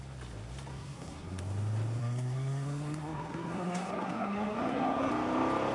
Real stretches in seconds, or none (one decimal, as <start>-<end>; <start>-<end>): 0.0-0.7; 1.4-2.0; 5.1-5.7